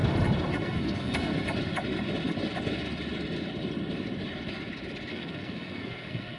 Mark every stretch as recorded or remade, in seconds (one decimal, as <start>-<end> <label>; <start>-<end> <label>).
0.0-0.5 recorded; 0.5-1.3 remade; 1.3-5.1 recorded; 5.1-6.4 remade